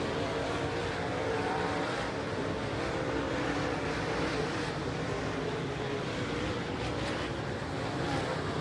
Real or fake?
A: fake